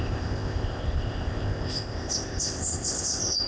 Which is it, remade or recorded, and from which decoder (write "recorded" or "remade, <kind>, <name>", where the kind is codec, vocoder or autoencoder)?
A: remade, codec, ZipCodec